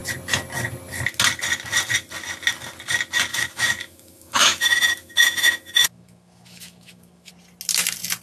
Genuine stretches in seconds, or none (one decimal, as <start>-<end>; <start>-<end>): 0.0-3.3; 7.3-8.2